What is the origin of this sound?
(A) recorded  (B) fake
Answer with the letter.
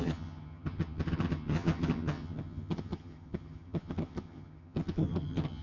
B